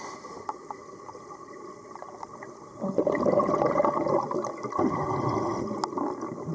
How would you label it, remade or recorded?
recorded